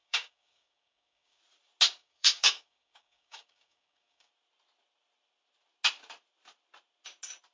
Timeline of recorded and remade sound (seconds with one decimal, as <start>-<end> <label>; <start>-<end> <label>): 0.0-1.4 remade; 1.4-2.0 recorded; 2.0-4.3 remade; 4.3-7.5 recorded